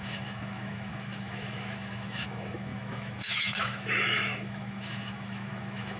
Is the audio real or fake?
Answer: fake